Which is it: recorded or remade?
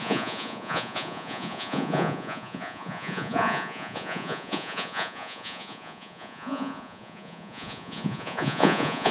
remade